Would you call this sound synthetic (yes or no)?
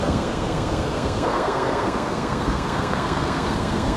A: yes